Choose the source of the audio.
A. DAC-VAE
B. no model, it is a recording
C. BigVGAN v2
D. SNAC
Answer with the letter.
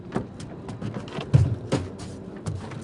B